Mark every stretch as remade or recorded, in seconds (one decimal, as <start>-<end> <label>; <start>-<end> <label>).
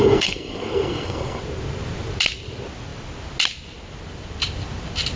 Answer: 0.0-1.4 remade; 1.4-5.2 recorded